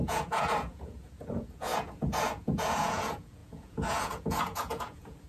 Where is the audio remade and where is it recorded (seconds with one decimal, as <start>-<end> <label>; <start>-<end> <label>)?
0.0-5.3 remade